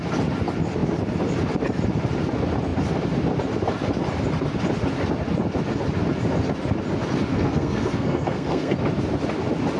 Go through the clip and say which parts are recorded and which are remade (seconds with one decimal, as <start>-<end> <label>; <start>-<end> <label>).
0.0-7.3 recorded; 7.3-8.8 remade; 8.8-9.8 recorded